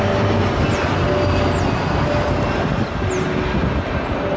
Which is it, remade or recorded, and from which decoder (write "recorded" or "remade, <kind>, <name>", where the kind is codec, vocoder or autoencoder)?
recorded